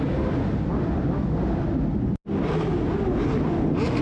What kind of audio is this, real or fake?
real